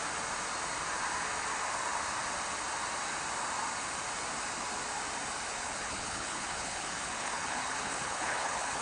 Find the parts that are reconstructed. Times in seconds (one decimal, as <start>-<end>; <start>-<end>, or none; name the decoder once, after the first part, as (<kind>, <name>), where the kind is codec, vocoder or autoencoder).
5.5-8.8 (codec, HILCodec)